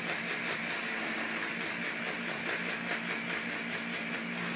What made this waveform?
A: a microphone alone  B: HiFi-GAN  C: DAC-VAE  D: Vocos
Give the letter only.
A